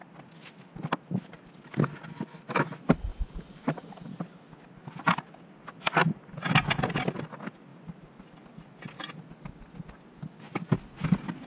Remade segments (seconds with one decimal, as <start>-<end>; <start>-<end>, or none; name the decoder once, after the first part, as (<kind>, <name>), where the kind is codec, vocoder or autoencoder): 3.1-5.0 (vocoder, BigVGAN v2); 7.7-8.4

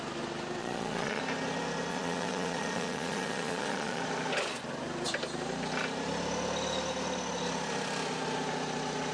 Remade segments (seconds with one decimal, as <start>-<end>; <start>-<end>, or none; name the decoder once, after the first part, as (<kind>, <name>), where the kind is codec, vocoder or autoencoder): 0.6-1.2 (vocoder, Vocos); 1.9-4.0

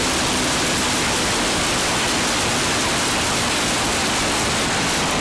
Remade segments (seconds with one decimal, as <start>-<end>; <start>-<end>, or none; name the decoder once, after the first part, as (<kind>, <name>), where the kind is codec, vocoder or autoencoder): none

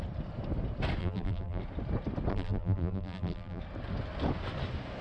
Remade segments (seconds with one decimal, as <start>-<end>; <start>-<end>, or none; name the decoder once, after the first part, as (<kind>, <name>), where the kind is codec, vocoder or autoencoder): 1.0-1.6 (vocoder, BigVGAN v2); 2.3-3.6

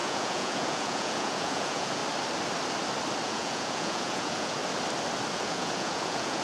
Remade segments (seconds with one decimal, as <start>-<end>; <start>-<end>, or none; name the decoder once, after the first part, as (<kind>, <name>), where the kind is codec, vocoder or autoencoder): 0.0-2.0 (vocoder, Vocos); 3.2-4.6; 5.3-6.4

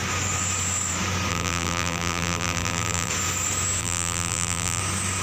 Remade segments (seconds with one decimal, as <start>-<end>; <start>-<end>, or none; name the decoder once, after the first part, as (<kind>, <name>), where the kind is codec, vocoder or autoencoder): 1.3-3.1 (vocoder, BigVGAN v2); 3.8-4.8

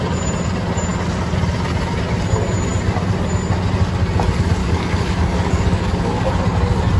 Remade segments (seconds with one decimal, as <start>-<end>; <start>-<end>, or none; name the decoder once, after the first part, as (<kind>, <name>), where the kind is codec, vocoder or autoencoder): 4.6-6.3 (codec, DAC)

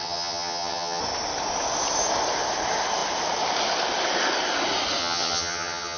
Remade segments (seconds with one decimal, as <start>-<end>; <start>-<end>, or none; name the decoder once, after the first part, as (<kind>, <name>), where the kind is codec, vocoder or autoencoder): 0.0-1.0 (vocoder, HiFi-GAN); 5.0-6.0